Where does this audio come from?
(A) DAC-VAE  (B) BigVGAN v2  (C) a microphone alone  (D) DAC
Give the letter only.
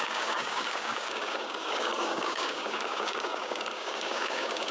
D